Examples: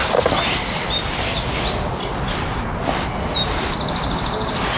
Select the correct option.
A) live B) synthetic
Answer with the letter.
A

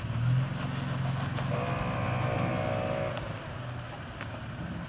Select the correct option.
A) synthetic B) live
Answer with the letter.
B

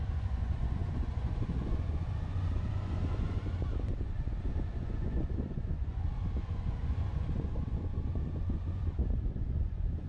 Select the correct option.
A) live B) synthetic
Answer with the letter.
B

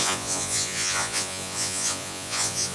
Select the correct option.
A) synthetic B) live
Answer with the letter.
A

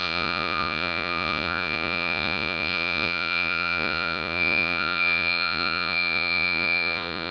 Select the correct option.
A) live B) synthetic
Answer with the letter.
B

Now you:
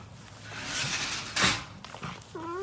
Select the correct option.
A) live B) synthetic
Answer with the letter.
A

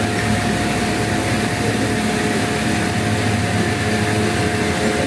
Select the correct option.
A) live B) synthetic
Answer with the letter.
A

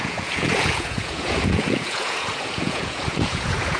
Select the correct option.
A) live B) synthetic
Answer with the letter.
B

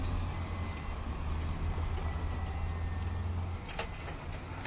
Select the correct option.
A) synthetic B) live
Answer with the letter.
B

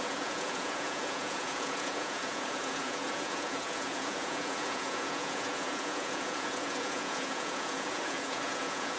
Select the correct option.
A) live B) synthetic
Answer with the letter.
B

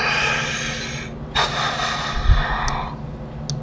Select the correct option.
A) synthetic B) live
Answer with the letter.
B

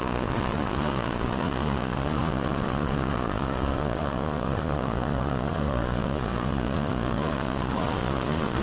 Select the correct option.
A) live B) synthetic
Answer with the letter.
B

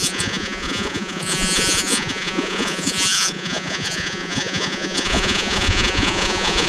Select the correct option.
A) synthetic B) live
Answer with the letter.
A